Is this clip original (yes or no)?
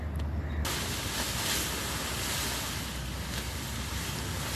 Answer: yes